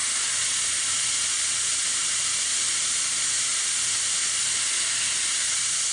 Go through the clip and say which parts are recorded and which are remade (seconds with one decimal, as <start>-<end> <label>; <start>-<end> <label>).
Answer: 0.0-5.9 recorded